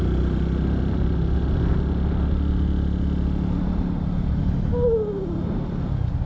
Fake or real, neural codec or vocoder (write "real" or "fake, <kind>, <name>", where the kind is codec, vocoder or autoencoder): real